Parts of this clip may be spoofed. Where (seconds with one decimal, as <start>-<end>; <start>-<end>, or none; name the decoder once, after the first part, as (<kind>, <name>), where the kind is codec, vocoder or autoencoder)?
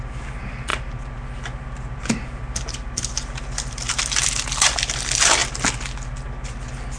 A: none